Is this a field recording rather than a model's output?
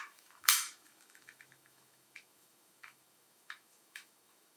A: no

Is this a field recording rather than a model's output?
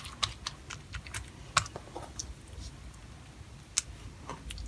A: yes